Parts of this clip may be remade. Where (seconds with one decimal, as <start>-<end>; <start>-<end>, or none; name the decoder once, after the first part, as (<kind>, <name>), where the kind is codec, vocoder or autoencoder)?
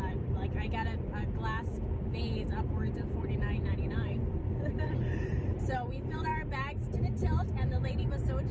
0.0-0.5 (vocoder, BigVGAN v2); 2.9-6.3; 7.0-8.5